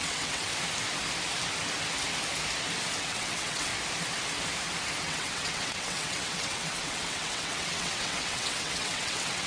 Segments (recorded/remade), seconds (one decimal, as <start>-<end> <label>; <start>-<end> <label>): 0.0-0.5 remade; 0.5-3.0 recorded; 3.0-3.7 remade; 3.7-5.0 recorded; 5.0-9.5 remade